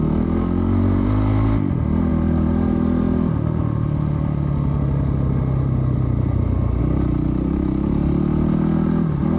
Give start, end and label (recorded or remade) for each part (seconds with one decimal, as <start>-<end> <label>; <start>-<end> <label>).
0.0-9.4 recorded